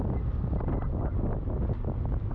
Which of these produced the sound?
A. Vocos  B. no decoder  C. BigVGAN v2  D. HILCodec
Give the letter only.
B